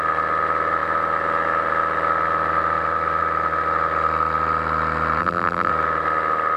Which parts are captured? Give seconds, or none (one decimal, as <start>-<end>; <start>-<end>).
0.0-5.2; 5.7-6.6